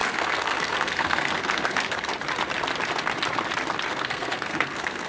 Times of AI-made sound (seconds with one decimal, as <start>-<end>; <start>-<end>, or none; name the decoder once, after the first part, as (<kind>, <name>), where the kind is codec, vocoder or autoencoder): 0.0-2.1 (codec, SNAC); 3.9-5.1